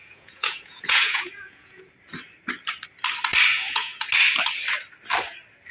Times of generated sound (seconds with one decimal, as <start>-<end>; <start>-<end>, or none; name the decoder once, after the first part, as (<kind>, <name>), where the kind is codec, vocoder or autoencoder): 0.0-1.8 (vocoder, Vocos); 3.5-4.1